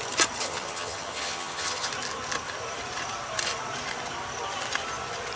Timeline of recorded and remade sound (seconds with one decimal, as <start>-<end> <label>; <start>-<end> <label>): 0.0-0.4 recorded; 0.4-1.9 remade; 1.9-5.4 recorded